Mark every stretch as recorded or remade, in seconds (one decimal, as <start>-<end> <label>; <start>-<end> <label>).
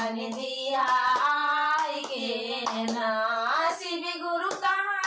0.0-5.1 recorded